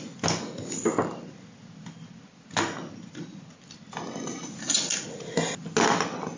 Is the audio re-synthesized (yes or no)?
no